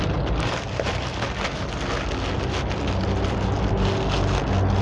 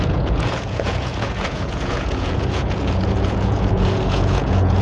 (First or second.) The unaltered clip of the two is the first